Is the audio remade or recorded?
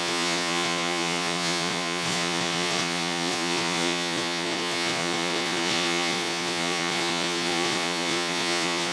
remade